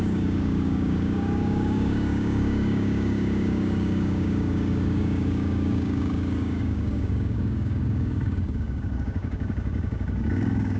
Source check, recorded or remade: remade